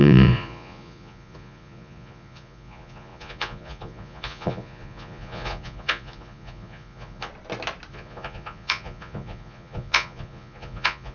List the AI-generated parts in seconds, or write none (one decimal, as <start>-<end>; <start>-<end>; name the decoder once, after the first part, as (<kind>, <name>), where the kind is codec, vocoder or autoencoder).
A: 0.0-7.3 (vocoder, Vocos); 7.9-11.1

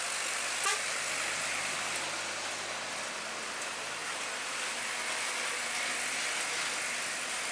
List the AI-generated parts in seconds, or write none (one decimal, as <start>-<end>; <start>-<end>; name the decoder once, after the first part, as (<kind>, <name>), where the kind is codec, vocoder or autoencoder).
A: none

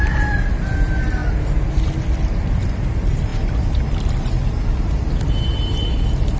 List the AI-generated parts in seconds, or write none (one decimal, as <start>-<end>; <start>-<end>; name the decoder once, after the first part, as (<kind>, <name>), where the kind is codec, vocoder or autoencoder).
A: none